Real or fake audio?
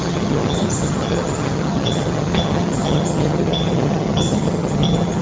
fake